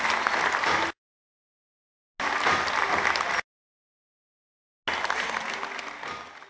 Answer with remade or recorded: recorded